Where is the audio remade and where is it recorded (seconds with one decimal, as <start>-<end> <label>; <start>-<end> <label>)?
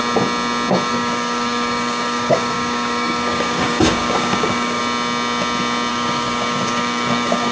0.0-0.9 recorded; 0.9-4.8 remade; 4.8-5.9 recorded; 5.9-7.5 remade